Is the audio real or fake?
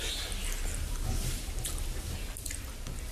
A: real